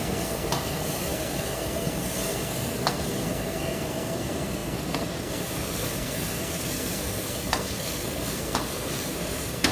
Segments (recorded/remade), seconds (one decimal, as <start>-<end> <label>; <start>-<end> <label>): 0.0-9.7 remade